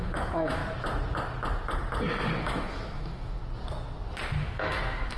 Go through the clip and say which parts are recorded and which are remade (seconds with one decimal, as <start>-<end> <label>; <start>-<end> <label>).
0.0-0.6 remade; 0.6-2.4 recorded; 2.4-3.4 remade; 3.4-4.4 recorded; 4.4-5.2 remade